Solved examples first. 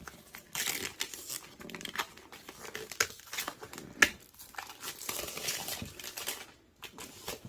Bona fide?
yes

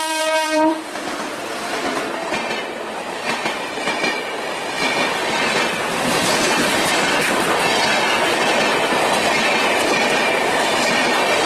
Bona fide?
no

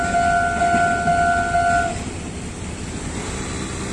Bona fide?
yes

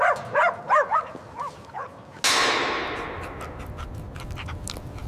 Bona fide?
yes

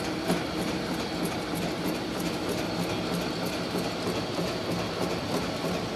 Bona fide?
yes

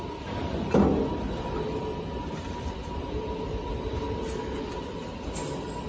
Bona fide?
yes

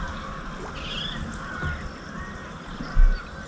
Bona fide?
yes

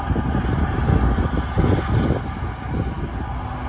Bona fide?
yes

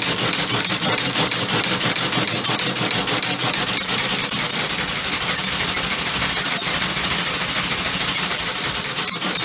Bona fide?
yes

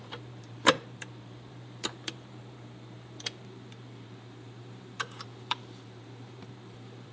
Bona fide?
no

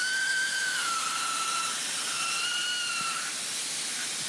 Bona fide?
yes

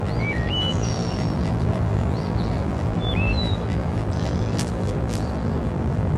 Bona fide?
no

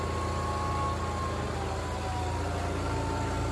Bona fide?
yes